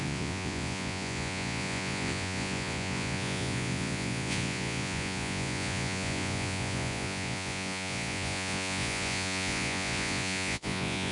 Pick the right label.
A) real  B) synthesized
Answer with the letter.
B